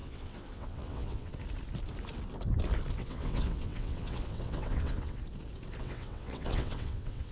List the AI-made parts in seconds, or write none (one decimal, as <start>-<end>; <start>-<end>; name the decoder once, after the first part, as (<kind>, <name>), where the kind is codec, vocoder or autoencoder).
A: 0.0-1.3 (vocoder, WaveNeXt); 3.0-5.2; 5.8-7.3